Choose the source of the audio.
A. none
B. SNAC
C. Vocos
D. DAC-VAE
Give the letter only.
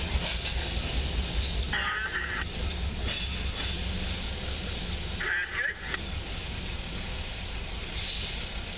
A